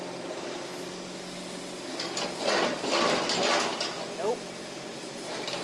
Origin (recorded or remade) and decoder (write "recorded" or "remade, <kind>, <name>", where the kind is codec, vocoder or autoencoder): recorded